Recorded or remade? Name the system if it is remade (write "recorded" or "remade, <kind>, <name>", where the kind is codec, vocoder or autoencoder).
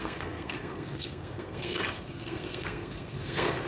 remade, codec, SNAC